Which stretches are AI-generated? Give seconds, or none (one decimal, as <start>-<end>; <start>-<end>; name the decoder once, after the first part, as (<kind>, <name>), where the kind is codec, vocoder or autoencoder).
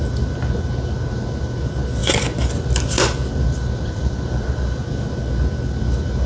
2.0-2.8 (vocoder, BigVGAN v2); 3.2-4.8